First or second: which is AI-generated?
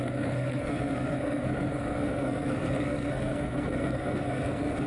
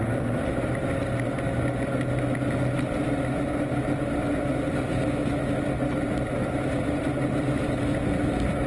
first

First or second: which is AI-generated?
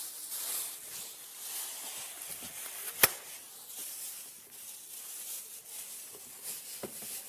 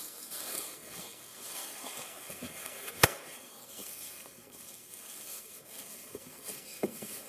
second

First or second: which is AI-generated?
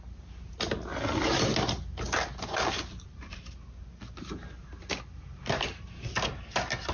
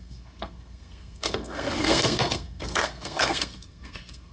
second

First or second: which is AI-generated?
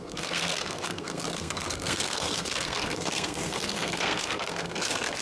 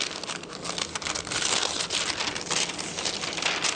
first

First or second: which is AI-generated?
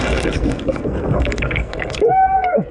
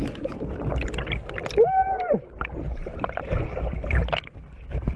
first